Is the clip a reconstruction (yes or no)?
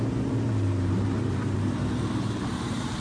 yes